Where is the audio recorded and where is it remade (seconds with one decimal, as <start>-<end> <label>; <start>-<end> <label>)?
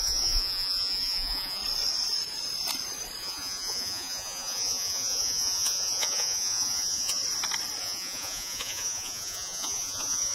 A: 0.0-1.6 remade; 1.6-3.2 recorded; 3.2-7.2 remade; 7.2-7.8 recorded; 7.8-10.3 remade